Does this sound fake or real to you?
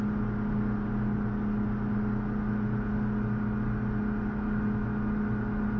real